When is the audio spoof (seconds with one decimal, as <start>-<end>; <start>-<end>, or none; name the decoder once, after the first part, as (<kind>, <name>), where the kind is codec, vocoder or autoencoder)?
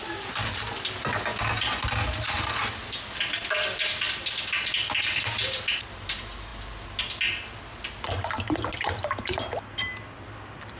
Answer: none